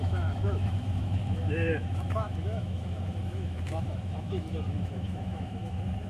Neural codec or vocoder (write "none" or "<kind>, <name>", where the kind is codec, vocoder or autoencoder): autoencoder, DAC-VAE